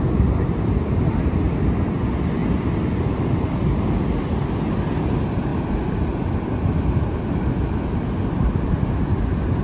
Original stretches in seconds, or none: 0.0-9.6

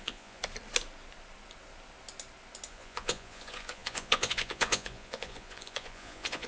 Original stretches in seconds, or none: 0.4-2.7